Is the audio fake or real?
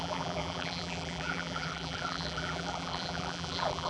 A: fake